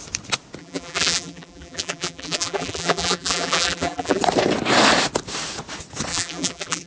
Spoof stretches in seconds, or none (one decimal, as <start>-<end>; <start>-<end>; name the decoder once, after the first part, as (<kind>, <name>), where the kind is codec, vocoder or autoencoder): 0.6-4.2 (vocoder, BigVGAN v2); 6.1-6.9